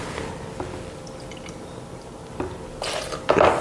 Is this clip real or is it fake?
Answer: real